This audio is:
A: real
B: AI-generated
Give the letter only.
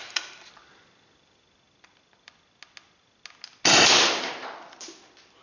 A